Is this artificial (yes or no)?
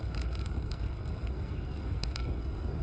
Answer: yes